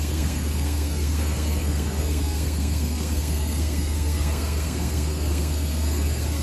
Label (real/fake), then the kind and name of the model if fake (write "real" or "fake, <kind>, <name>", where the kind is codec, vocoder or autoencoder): fake, codec, SNAC